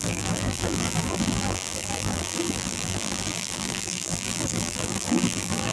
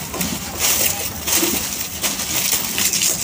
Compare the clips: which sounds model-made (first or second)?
first